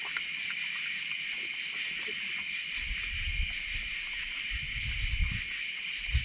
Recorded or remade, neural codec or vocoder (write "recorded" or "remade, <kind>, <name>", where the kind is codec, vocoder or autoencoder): recorded